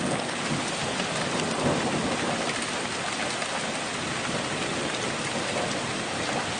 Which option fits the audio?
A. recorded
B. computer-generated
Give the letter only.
A